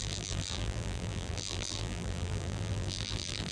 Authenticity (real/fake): fake